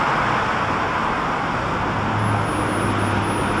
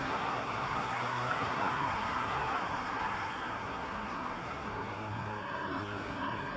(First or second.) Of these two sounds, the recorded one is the first